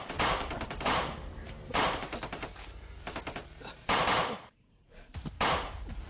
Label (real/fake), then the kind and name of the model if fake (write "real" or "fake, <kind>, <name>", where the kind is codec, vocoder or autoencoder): fake, vocoder, BigVGAN v2